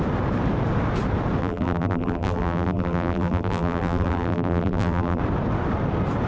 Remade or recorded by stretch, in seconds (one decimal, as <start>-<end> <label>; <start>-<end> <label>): 0.0-1.4 recorded; 1.4-5.2 remade; 5.2-6.3 recorded